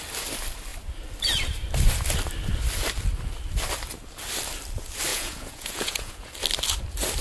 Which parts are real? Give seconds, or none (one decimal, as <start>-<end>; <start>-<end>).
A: 0.0-5.1; 6.3-7.2